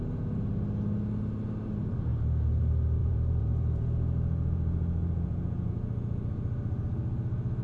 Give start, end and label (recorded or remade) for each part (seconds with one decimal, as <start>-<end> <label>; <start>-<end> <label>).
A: 0.0-3.0 recorded; 3.0-5.7 remade; 5.7-7.6 recorded